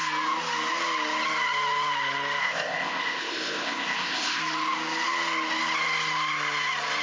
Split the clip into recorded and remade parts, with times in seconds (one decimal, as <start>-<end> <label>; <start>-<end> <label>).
0.0-2.4 recorded; 2.4-4.4 remade; 4.4-7.0 recorded

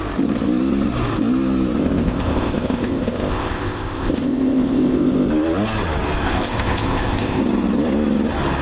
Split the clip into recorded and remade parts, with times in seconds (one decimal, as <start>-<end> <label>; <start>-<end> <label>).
0.0-1.8 recorded; 1.8-5.3 remade; 5.3-6.2 recorded; 6.2-7.4 remade; 7.4-8.6 recorded

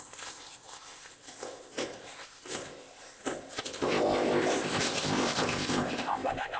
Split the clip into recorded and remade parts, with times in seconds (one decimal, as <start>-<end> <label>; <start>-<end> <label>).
0.0-6.6 remade